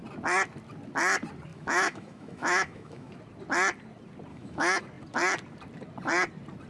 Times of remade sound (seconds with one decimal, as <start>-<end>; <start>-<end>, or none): 1.5-3.1; 4.3-4.8